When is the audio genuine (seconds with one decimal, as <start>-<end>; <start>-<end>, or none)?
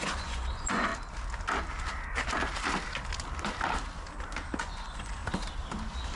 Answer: 0.9-4.6; 5.2-6.2